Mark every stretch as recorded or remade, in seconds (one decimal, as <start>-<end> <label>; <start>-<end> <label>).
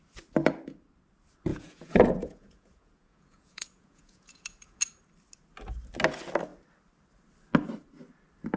0.0-1.5 recorded; 1.5-4.8 remade; 4.8-8.6 recorded